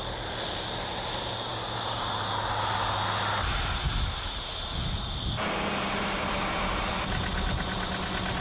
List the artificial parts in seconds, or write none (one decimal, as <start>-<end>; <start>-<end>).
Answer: none